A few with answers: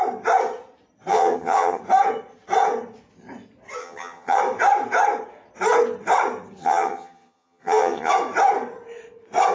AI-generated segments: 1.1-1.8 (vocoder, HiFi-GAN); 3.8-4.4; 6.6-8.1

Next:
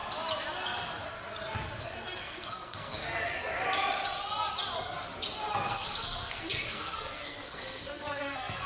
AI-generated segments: 1.8-3.5 (codec, SNAC); 5.5-8.7

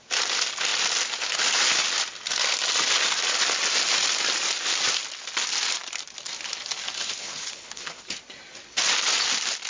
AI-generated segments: 7.2-8.0 (codec, HILCodec)

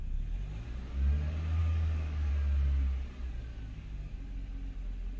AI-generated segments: 1.6-2.3 (codec, DAC); 3.5-4.1

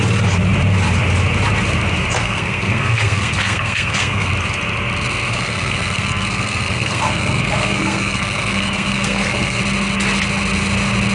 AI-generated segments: 2.2-4.3 (codec, SNAC); 5.3-9.6